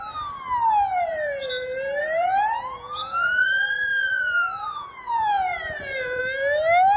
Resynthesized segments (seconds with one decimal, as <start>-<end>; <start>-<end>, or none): 0.9-1.5; 2.0-6.2